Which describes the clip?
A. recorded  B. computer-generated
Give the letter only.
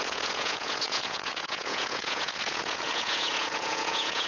B